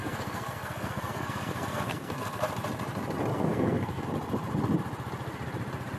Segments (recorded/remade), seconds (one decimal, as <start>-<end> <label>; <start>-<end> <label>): 0.0-2.4 remade; 2.4-3.3 recorded; 3.3-4.1 remade; 4.1-6.0 recorded